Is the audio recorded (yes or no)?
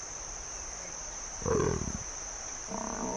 no